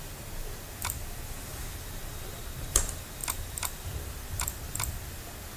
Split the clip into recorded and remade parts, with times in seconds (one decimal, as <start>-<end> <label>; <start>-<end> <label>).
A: 0.0-1.5 recorded; 1.5-2.4 remade; 2.4-3.2 recorded; 3.2-5.0 remade; 5.0-5.6 recorded